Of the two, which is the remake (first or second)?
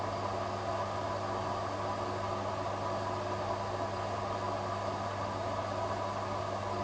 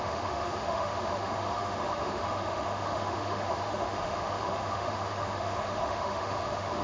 second